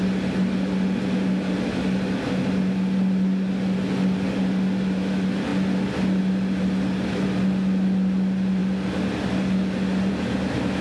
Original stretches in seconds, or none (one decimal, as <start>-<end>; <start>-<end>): 0.0-10.8